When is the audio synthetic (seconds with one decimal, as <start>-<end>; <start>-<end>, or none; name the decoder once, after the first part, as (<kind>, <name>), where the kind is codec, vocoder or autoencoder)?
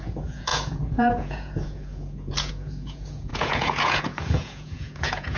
0.0-5.4 (vocoder, Vocos)